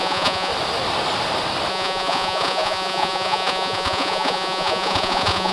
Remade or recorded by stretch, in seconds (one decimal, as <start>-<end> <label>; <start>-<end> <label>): 0.0-0.5 remade; 0.5-1.7 recorded; 1.7-5.5 remade